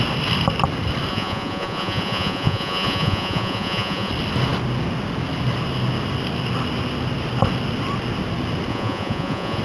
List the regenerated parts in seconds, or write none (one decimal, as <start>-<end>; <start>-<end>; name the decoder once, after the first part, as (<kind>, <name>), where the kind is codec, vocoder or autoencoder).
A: 1.1-4.1 (vocoder, Vocos); 8.7-9.6

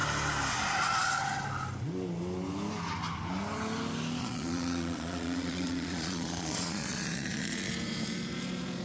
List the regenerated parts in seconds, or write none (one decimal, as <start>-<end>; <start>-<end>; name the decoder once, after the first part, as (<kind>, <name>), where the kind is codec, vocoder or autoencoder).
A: 4.2-7.7 (vocoder, Vocos)